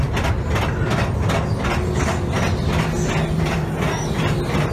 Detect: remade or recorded recorded